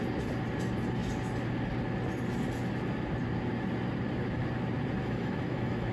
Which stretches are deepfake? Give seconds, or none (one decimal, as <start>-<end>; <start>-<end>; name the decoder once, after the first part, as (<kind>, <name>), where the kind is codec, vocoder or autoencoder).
5.0-5.9 (autoencoder, DAC-VAE)